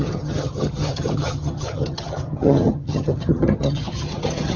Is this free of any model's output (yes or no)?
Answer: no